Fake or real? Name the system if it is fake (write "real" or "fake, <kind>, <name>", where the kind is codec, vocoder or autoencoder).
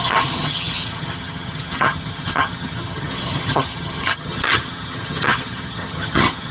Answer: fake, vocoder, HiFi-GAN